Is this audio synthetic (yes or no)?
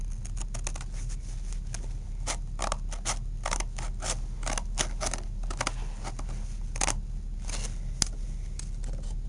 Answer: no